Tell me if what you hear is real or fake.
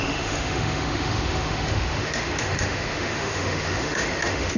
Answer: fake